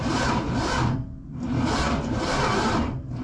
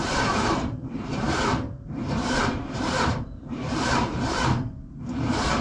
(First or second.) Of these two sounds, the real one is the first